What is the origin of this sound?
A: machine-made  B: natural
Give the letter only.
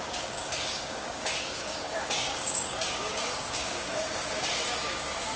A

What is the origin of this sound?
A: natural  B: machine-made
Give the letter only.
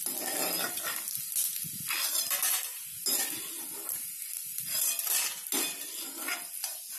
A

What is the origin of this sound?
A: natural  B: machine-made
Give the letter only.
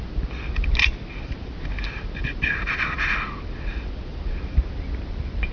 A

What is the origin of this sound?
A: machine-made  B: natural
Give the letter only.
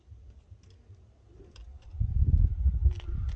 B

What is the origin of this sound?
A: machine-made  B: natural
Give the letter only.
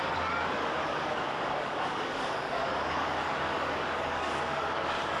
A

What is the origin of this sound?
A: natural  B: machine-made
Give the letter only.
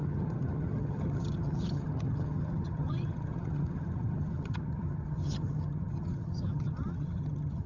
B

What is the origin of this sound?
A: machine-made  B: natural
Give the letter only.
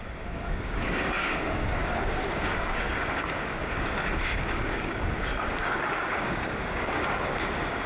A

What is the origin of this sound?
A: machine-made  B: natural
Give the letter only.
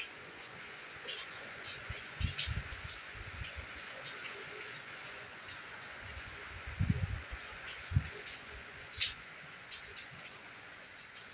A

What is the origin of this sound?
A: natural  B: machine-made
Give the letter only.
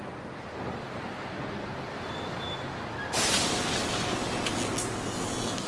A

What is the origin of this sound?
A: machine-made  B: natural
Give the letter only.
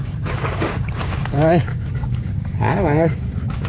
A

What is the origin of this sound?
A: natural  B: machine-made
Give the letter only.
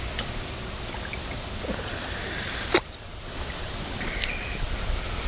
A